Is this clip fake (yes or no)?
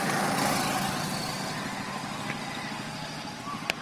no